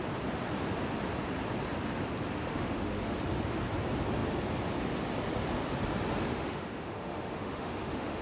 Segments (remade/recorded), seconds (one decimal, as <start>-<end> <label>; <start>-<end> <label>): 0.0-2.5 recorded; 2.5-3.2 remade; 3.2-6.3 recorded; 6.3-8.2 remade